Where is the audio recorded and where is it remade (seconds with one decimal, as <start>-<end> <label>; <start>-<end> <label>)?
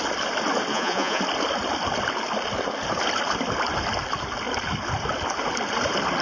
0.0-0.7 recorded; 0.7-1.2 remade; 1.2-6.2 recorded